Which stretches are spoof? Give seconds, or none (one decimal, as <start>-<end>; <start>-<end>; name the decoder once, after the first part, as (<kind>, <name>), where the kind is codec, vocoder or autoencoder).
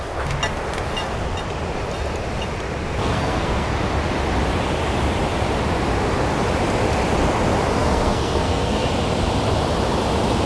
3.0-3.7 (codec, SNAC); 7.8-8.9